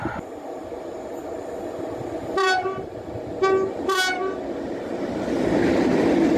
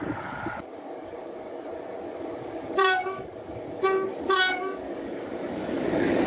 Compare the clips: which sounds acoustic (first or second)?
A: first